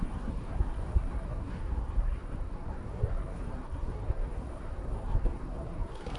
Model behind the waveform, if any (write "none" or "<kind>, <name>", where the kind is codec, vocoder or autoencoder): codec, SNAC